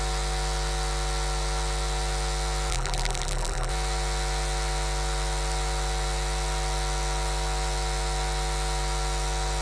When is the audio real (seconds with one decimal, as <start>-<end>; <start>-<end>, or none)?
0.0-2.7; 3.7-9.6